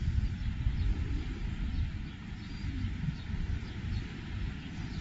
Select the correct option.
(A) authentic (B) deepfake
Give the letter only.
B